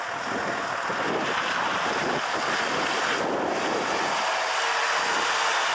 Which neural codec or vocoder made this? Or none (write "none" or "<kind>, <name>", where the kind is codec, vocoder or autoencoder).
none